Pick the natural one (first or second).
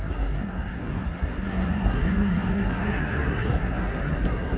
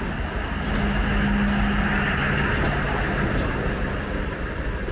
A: second